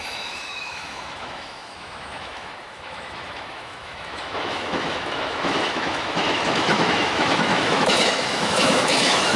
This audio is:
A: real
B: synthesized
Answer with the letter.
B